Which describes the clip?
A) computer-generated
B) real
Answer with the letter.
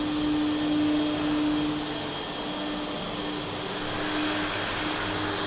B